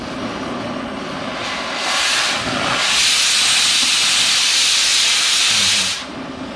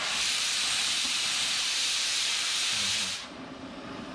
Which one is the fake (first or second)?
second